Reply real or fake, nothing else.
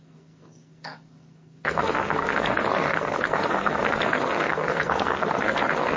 fake